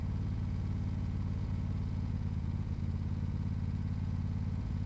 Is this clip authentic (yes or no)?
no